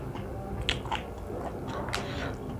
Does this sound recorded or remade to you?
recorded